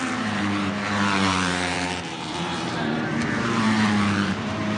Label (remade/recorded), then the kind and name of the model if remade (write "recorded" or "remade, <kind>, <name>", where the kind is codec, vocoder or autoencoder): remade, vocoder, BigVGAN v2